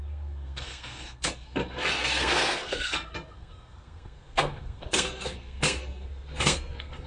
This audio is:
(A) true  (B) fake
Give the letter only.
B